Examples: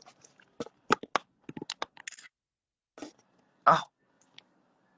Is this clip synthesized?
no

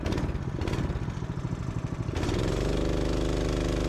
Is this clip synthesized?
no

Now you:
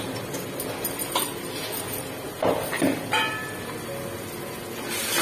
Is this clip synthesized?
no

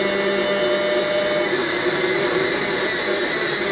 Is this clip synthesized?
no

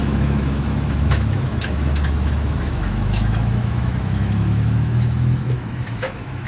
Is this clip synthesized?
yes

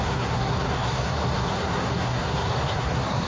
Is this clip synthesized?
yes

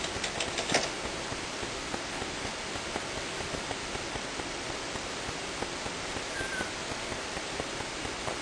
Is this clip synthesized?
no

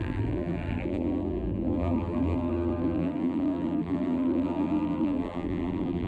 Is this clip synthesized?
yes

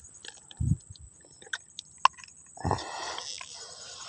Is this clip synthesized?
no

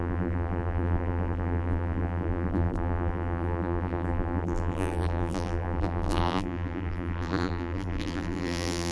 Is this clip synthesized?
yes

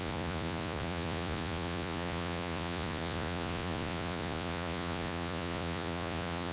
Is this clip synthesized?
yes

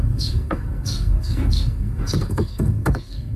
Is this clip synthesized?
yes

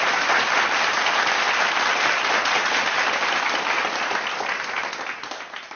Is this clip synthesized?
no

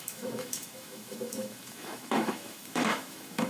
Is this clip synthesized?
yes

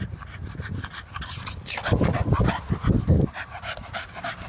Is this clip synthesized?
no